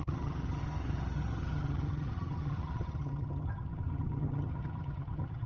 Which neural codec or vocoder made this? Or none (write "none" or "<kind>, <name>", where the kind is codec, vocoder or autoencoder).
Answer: vocoder, HiFi-GAN